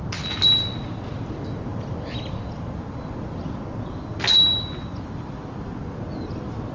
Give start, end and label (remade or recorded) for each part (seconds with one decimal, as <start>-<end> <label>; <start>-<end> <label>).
0.0-4.5 recorded; 4.5-5.7 remade; 5.7-6.7 recorded